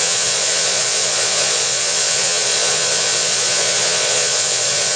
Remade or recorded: remade